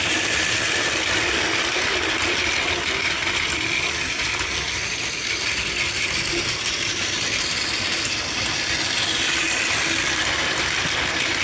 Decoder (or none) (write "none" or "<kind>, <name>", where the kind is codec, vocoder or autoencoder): none